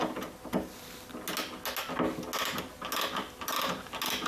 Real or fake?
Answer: real